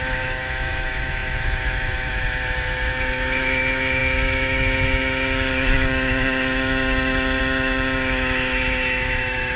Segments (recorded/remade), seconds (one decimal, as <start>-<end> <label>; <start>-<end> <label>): 0.0-9.6 remade